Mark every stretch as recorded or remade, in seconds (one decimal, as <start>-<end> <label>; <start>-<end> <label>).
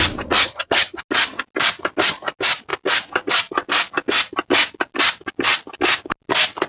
0.0-0.4 recorded; 0.4-1.0 remade; 1.0-6.7 recorded